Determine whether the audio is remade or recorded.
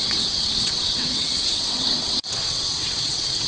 remade